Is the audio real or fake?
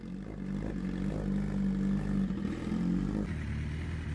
real